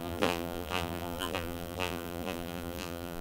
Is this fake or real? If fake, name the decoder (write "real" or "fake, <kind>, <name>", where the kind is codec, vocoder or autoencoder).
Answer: fake, vocoder, BigVGAN v2